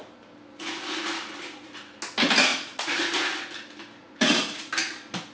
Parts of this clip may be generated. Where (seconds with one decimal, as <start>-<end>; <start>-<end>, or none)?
2.5-3.0; 4.0-4.7